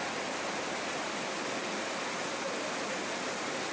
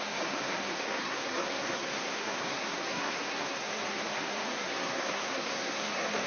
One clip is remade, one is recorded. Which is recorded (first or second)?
first